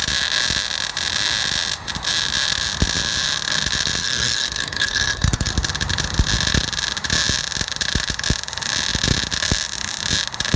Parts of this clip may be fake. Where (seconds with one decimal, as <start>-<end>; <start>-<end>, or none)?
4.0-5.5